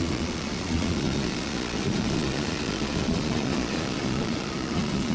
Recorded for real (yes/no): no